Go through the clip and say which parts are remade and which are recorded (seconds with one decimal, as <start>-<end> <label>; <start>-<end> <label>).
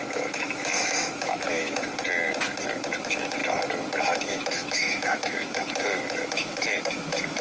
0.0-1.9 remade; 1.9-3.0 recorded; 3.0-3.4 remade; 3.4-4.0 recorded; 4.0-7.4 remade